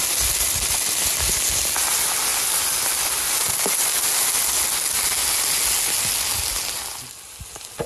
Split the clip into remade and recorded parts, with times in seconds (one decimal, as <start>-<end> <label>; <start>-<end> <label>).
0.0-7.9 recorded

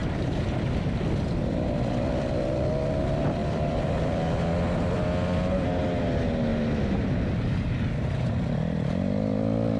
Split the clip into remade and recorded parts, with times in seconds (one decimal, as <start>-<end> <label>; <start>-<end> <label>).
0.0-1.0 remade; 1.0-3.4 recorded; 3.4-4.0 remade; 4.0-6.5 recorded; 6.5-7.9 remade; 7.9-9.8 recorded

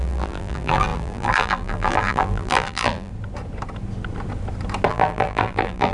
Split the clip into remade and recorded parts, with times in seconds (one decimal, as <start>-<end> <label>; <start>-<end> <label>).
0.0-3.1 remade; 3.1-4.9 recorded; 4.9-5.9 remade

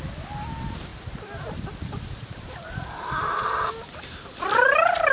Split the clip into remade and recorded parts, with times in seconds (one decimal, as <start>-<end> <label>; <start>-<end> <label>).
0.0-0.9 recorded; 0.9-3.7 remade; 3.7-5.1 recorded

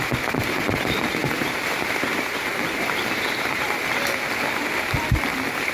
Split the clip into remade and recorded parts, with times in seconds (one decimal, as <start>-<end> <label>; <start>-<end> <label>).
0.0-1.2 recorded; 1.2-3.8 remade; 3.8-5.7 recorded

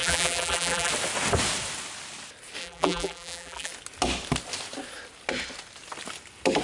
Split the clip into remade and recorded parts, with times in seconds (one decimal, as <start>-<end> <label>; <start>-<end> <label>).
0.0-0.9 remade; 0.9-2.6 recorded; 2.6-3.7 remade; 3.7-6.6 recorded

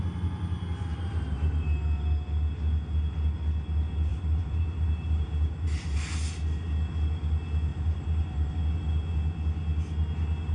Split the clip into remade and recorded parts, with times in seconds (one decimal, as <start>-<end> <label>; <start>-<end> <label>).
0.0-0.9 recorded; 0.9-1.5 remade; 1.5-4.1 recorded; 4.1-6.0 remade; 6.0-7.7 recorded; 7.7-8.5 remade; 8.5-10.5 recorded

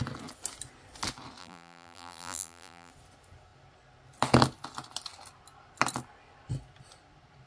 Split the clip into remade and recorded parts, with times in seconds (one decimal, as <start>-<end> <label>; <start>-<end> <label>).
0.0-1.4 recorded; 1.4-2.9 remade; 2.9-7.5 recorded